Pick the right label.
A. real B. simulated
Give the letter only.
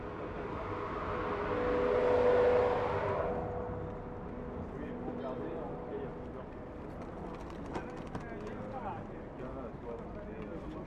A